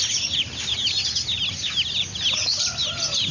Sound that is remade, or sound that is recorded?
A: recorded